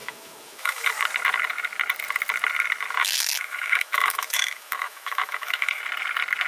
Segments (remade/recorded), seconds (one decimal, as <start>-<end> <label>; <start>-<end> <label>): 0.0-0.9 remade; 0.9-3.0 recorded; 3.0-5.8 remade; 5.8-6.5 recorded